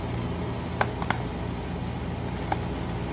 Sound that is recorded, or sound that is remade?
recorded